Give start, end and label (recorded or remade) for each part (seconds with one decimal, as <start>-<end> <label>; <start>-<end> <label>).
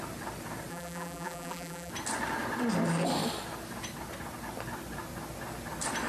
0.0-0.7 recorded; 0.7-1.9 remade; 1.9-6.1 recorded